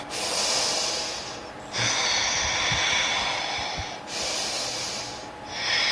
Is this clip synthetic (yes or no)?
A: no